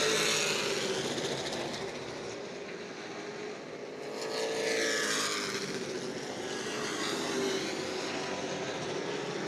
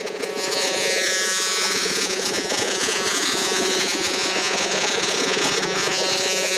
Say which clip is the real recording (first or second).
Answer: first